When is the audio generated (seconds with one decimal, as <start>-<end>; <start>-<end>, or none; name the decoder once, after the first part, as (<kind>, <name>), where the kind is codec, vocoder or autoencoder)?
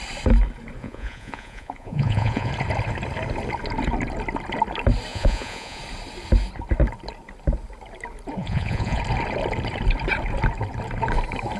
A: 0.8-2.5 (vocoder, Vocos); 5.1-5.8; 8.4-9.0